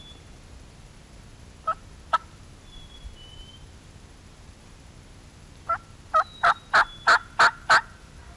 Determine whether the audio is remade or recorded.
recorded